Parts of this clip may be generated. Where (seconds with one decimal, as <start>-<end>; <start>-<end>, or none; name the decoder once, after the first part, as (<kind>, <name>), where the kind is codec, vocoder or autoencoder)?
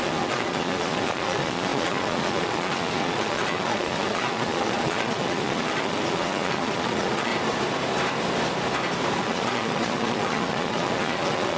0.0-7.3 (vocoder, Vocos); 9.2-11.6